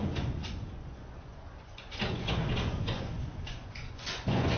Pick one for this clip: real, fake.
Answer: fake